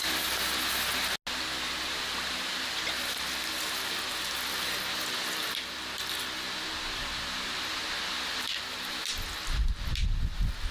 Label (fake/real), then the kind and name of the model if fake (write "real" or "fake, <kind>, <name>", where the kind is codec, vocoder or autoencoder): real